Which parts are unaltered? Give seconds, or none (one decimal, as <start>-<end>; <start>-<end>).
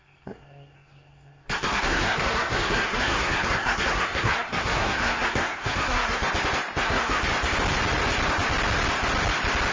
6.2-6.8; 7.2-9.7